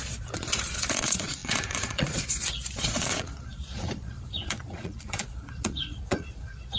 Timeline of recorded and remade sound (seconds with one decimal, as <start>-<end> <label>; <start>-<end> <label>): 0.0-6.8 remade